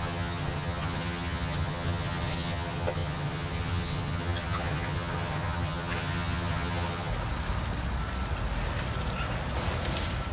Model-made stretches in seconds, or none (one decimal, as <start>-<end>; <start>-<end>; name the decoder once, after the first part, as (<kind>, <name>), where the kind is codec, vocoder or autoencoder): 0.0-7.1 (vocoder, HiFi-GAN)